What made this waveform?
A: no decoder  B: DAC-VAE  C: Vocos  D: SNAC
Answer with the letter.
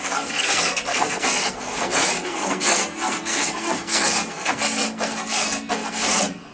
D